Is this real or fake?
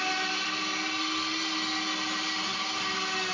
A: real